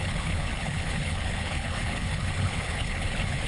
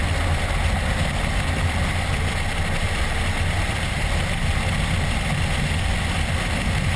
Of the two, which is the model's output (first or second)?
first